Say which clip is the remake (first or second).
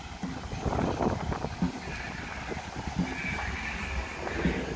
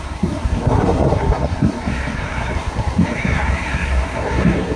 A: second